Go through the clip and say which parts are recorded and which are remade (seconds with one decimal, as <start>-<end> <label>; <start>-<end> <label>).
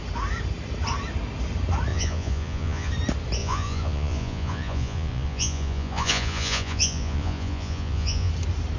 0.0-1.9 recorded; 1.9-2.9 remade; 2.9-3.4 recorded; 3.4-8.3 remade; 8.3-8.8 recorded